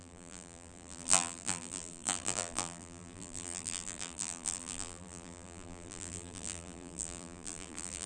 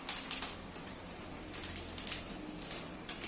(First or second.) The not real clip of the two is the first